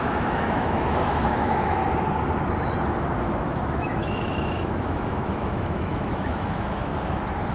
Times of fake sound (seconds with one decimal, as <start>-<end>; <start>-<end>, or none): 0.0-1.8; 3.2-6.9